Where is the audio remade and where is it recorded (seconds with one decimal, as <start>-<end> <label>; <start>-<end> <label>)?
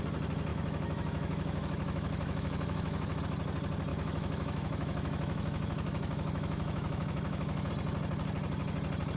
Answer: 0.0-0.5 recorded; 0.5-3.2 remade; 3.2-3.9 recorded; 3.9-7.7 remade; 7.7-9.2 recorded